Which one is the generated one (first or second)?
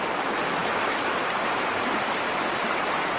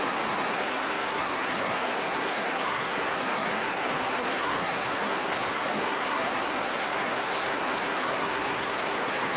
second